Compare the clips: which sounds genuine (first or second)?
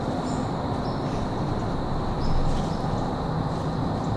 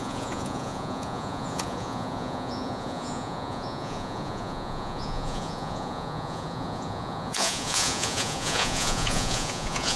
first